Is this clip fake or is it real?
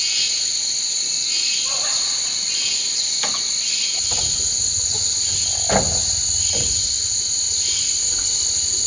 real